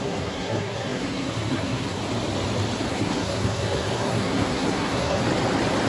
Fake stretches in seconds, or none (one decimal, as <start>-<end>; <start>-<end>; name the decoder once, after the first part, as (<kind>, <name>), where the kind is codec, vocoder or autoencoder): 0.0-2.0 (codec, SNAC); 2.9-5.2

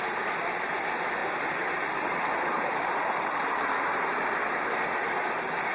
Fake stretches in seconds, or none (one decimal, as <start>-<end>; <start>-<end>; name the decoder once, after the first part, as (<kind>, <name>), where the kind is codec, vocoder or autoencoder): 1.2-4.4 (vocoder, BigVGAN v2)

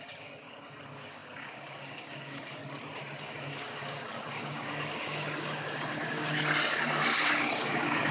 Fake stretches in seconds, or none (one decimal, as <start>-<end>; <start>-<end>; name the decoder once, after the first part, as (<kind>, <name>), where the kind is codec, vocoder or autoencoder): 0.0-2.6 (codec, DAC); 3.2-8.1

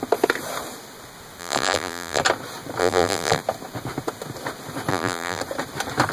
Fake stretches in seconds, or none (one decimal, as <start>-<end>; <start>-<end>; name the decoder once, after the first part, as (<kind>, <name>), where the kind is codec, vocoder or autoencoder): 1.4-2.2 (vocoder, BigVGAN v2); 2.8-3.4; 4.9-5.4